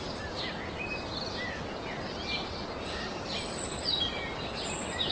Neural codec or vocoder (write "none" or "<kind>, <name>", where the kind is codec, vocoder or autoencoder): none